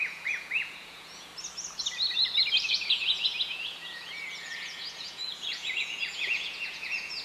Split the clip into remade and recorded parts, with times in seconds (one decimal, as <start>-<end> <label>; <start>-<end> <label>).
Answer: 0.0-1.3 remade; 1.3-2.7 recorded; 2.7-7.2 remade